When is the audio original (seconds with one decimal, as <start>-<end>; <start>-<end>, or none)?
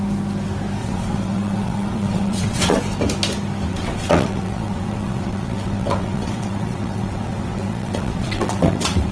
0.0-0.8; 2.8-3.7